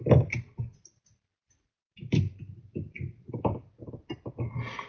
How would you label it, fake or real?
real